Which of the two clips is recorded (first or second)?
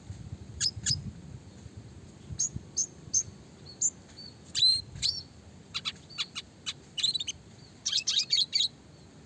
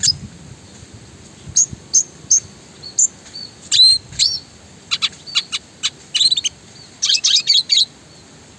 second